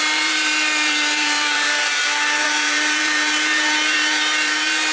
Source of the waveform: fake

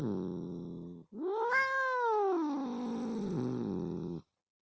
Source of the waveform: real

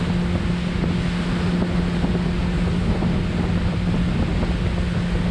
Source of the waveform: real